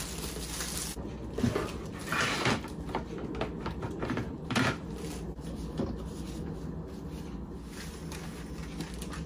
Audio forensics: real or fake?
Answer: real